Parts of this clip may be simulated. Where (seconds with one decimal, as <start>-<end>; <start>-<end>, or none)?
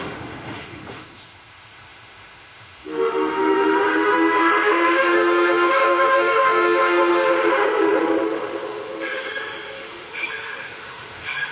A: 0.0-11.5